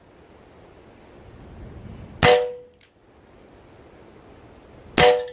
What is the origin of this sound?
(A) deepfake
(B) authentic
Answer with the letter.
B